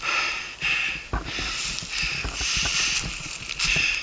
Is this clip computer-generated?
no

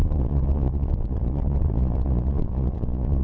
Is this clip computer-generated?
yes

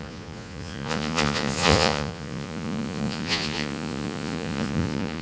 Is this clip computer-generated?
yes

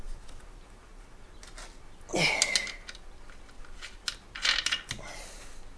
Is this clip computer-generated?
no